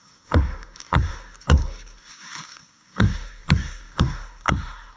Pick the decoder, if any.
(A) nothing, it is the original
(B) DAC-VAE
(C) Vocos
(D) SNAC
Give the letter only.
D